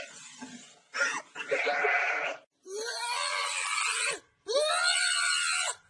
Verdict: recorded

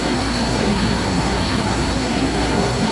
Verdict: remade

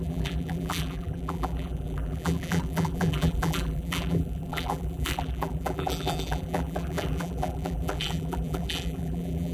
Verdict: remade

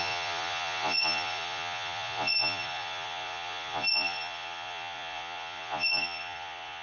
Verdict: remade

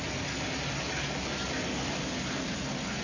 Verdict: recorded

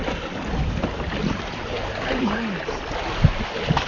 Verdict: recorded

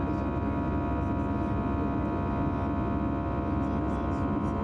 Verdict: recorded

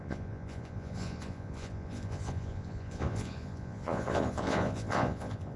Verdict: remade